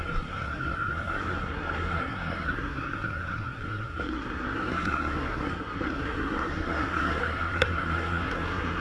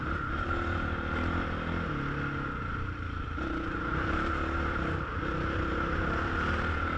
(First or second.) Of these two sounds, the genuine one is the second